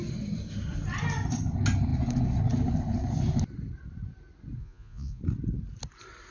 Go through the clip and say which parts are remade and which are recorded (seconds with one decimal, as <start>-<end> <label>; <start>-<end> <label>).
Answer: 0.0-4.6 recorded; 4.6-5.2 remade; 5.2-6.3 recorded